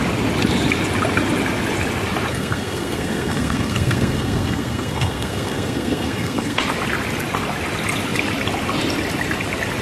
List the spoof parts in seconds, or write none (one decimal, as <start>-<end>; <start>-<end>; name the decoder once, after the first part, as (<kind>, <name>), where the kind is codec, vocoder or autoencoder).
2.3-6.6 (codec, SNAC)